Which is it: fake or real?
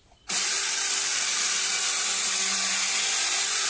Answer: real